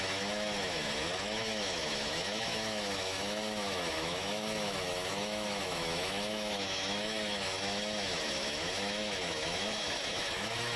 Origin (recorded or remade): remade